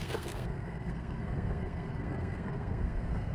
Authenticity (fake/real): fake